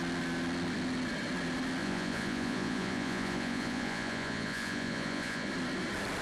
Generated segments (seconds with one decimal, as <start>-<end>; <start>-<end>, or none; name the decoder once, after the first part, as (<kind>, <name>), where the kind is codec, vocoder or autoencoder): 1.8-5.5 (vocoder, Vocos)